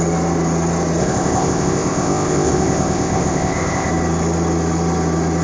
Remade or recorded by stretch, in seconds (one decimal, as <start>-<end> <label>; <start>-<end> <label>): 0.0-1.0 recorded; 1.0-3.9 remade; 3.9-5.4 recorded